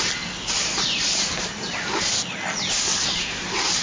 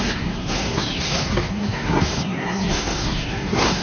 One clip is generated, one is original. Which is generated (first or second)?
second